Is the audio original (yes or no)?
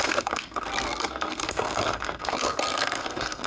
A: no